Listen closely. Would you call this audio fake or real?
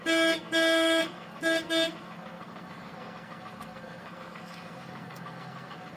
fake